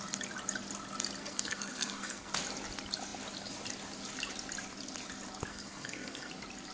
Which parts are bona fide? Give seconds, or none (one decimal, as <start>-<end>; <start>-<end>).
0.0-1.2; 2.3-5.5; 6.3-6.7